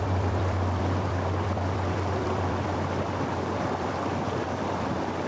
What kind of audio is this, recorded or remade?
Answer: remade